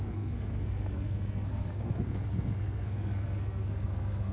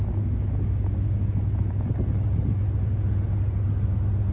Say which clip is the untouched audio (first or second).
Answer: second